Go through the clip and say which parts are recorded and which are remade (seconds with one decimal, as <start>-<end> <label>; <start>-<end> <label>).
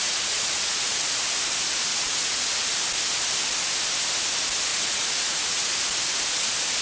0.0-1.2 remade; 1.2-1.9 recorded; 1.9-2.5 remade; 2.5-4.7 recorded; 4.7-5.7 remade; 5.7-6.8 recorded